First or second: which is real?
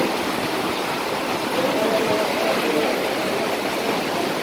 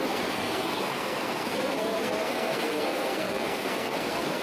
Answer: first